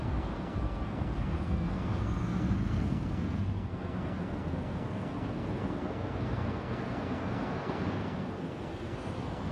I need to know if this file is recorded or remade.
remade